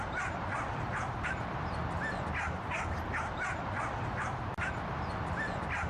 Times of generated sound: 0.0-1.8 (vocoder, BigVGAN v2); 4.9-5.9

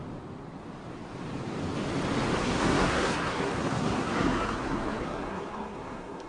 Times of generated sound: 2.4-6.3 (codec, SNAC)

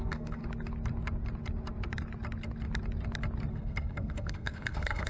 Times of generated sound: 0.0-0.4 (codec, SNAC); 3.5-5.1

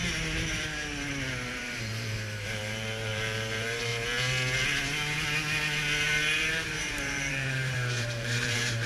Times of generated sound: 1.5-3.9 (vocoder, BigVGAN v2); 6.4-8.9

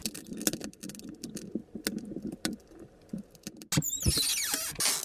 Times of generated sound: none

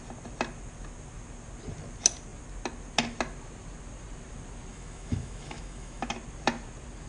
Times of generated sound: 4.7-6.1 (autoencoder, DAC-VAE)